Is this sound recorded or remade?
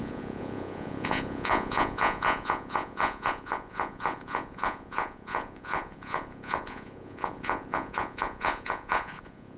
remade